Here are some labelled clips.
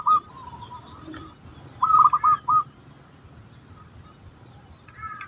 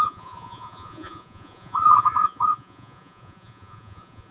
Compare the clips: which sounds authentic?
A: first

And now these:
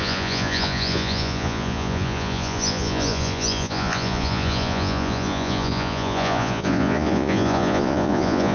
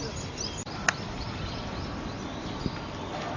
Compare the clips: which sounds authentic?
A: second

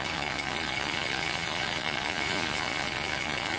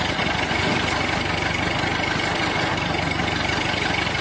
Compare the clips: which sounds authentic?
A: second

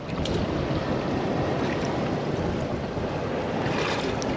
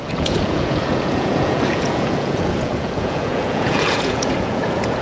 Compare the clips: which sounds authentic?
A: first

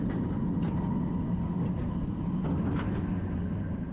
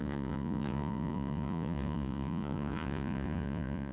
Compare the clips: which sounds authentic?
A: first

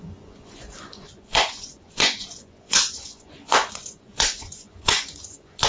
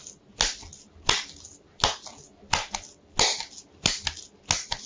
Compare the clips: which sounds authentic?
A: second